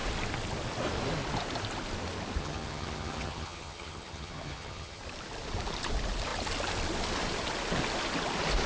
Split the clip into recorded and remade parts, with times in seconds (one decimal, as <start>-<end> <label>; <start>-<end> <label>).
0.0-2.4 recorded; 2.4-5.0 remade; 5.0-8.7 recorded